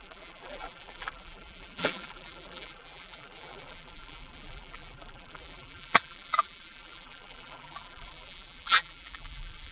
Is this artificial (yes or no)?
yes